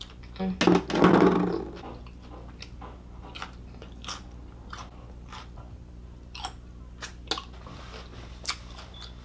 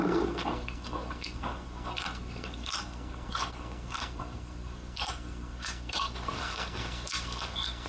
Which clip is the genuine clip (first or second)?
first